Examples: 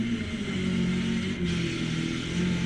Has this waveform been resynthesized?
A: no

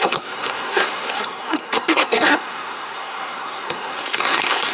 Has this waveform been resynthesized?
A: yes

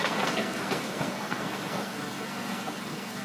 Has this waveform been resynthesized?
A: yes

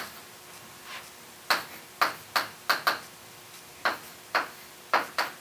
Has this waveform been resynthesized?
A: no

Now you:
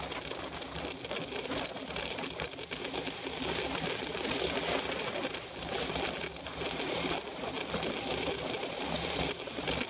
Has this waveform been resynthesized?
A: no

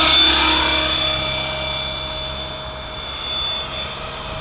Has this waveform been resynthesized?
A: no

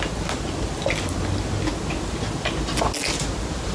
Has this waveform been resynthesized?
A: no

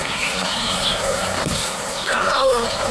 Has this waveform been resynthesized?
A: yes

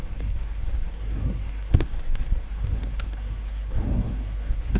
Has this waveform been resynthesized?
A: yes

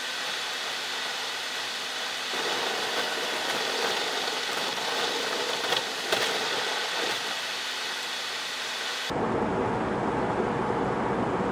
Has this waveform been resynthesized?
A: no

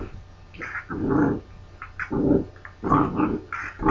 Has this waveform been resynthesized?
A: no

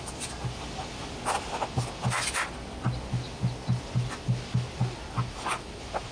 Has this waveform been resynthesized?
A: no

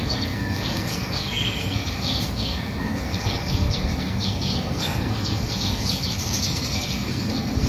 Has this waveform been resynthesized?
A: yes